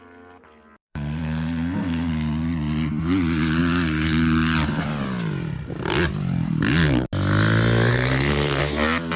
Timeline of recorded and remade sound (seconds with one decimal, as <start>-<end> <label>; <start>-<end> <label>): 0.0-0.8 recorded; 0.8-2.1 remade; 2.1-7.9 recorded; 7.9-8.6 remade; 8.6-9.2 recorded